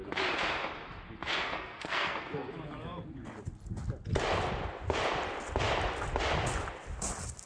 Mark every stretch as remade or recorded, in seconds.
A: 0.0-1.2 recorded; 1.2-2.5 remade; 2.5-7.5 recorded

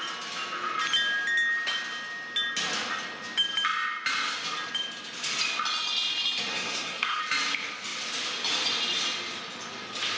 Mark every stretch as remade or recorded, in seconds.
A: 0.0-6.5 recorded; 6.5-7.2 remade; 7.2-10.2 recorded

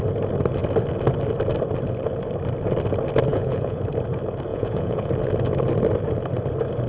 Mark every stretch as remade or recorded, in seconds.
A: 0.0-3.3 recorded; 3.3-3.8 remade; 3.8-4.5 recorded; 4.5-5.1 remade; 5.1-6.9 recorded

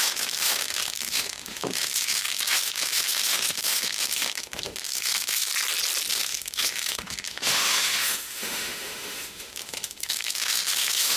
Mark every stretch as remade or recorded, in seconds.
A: 0.0-5.5 remade; 5.5-6.1 recorded; 6.1-11.2 remade